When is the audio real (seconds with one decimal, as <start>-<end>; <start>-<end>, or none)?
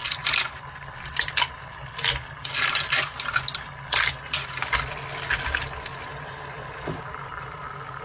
1.0-8.0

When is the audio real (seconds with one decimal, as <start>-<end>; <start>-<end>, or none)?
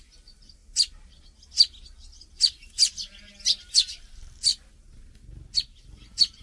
0.0-6.4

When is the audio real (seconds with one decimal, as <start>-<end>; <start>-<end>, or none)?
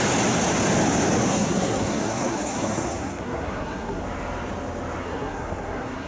0.0-1.3; 4.0-5.0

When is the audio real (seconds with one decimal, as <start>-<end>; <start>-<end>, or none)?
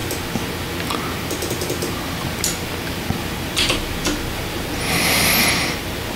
0.0-6.2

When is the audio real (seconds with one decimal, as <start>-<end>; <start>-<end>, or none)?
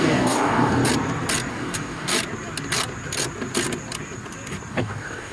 0.8-1.5; 2.1-4.7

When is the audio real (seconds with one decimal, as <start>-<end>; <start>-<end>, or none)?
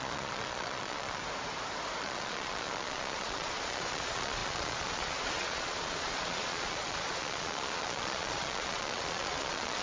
1.2-2.0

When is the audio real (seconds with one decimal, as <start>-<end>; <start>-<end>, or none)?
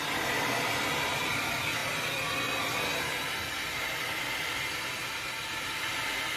0.0-6.4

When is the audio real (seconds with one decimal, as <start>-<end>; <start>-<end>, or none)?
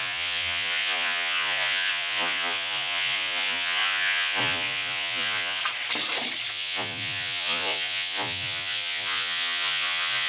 5.6-6.5